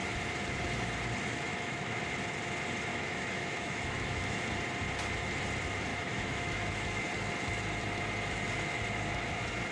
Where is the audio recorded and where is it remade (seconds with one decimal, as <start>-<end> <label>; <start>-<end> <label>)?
0.0-1.5 recorded; 1.5-2.0 remade; 2.0-2.9 recorded; 2.9-4.4 remade; 4.4-5.9 recorded; 5.9-7.1 remade; 7.1-9.7 recorded